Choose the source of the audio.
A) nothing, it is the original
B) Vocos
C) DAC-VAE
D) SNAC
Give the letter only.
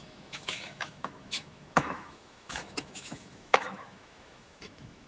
C